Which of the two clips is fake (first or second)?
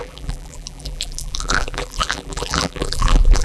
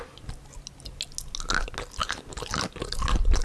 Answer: first